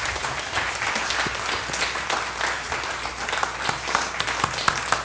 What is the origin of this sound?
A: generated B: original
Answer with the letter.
B